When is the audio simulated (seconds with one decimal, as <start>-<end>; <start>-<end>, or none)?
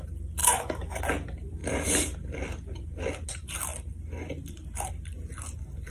0.4-1.0